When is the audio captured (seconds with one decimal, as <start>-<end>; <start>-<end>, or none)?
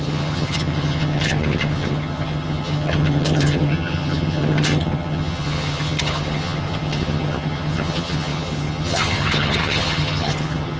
none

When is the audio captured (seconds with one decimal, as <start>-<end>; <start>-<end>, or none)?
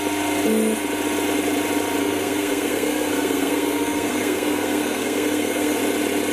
0.0-2.0; 5.8-6.3